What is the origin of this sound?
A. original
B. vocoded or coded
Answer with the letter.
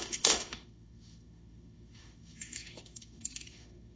B